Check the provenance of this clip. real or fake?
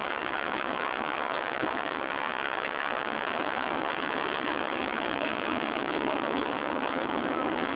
fake